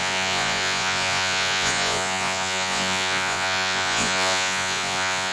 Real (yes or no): no